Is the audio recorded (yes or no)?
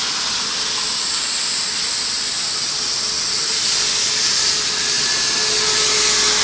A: yes